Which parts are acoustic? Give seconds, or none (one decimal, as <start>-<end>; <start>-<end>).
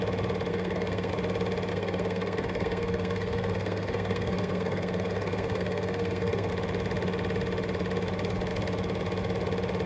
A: 0.0-0.5; 1.1-1.7; 6.5-9.9